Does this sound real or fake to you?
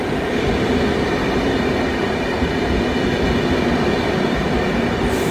real